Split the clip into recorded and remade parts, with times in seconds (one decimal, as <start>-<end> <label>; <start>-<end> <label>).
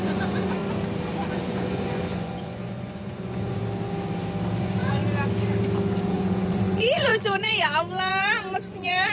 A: 0.0-0.6 remade; 0.6-1.3 recorded; 1.3-3.6 remade; 3.6-4.6 recorded; 4.6-5.0 remade; 5.0-6.1 recorded; 6.1-9.1 remade